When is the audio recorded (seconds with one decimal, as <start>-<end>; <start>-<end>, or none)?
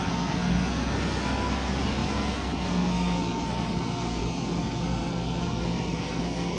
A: none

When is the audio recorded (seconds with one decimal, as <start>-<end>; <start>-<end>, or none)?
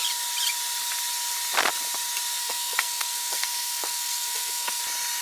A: 0.0-2.4; 4.8-5.2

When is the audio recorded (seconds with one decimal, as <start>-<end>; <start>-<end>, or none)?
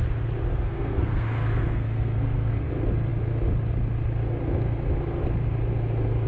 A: 0.0-0.5; 2.7-6.3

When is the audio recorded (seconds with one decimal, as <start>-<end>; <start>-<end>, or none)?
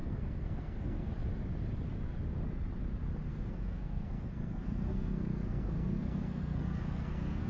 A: 1.1-3.3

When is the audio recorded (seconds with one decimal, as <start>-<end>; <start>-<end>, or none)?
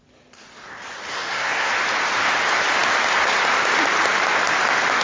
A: 0.0-1.1; 1.7-5.0